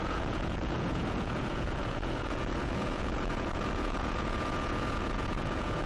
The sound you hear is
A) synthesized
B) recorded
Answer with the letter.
A